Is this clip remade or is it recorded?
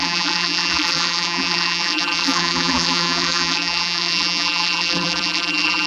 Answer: remade